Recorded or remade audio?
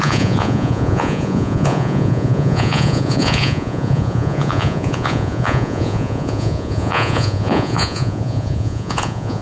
remade